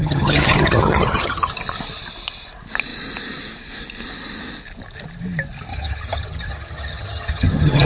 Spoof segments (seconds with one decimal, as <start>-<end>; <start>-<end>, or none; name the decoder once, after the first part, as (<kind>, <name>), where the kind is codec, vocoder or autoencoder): 0.0-1.5 (vocoder, HiFi-GAN); 5.7-7.9